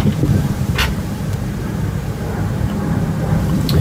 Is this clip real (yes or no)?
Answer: yes